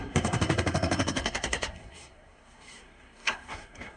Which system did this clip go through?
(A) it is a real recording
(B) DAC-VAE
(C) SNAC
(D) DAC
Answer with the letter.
C